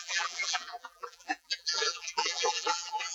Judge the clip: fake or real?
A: fake